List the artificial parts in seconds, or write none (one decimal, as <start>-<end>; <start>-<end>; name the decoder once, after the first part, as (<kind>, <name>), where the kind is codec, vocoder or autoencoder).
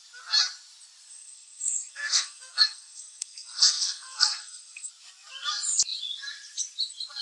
1.1-4.9 (codec, SNAC)